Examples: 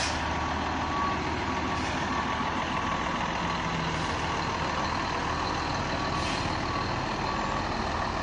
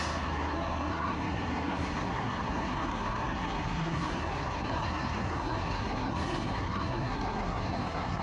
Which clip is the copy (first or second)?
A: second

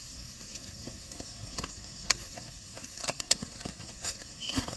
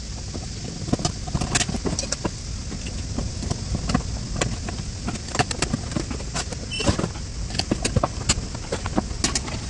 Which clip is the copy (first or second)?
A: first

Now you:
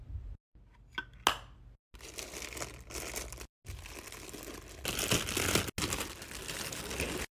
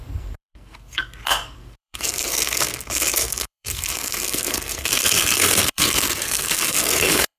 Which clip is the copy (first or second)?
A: second